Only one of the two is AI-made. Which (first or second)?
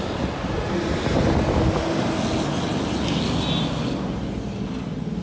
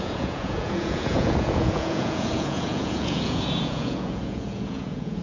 second